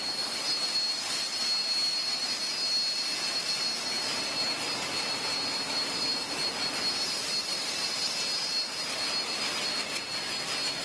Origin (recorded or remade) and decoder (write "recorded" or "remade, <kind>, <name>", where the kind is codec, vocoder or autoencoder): recorded